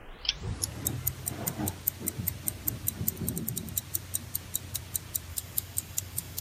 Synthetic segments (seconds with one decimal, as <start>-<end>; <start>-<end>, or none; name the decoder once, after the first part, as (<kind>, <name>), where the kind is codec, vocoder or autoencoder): 5.3-6.4 (codec, DAC)